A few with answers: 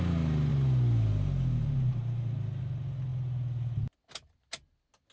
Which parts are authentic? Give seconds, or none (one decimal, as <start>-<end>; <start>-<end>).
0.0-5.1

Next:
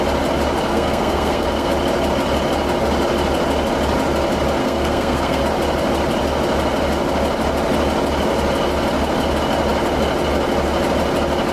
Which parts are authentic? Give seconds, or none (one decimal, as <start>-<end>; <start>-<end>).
0.0-0.7; 1.7-4.6; 5.4-11.5

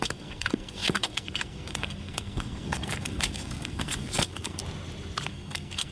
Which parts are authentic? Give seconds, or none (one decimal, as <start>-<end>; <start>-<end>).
4.6-5.3

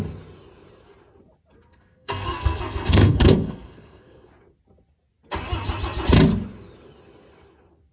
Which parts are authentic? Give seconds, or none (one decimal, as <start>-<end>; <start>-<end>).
0.0-1.7; 4.3-7.9